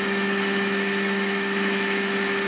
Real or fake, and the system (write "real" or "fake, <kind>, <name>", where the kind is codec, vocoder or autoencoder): fake, autoencoder, DAC-VAE